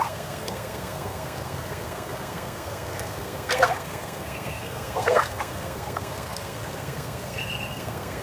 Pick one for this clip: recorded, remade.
remade